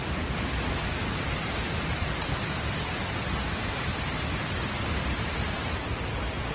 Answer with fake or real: real